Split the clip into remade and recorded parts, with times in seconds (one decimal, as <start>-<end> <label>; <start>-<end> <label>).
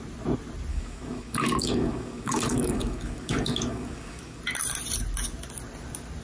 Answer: 0.0-0.7 recorded; 0.7-4.4 remade; 4.4-6.2 recorded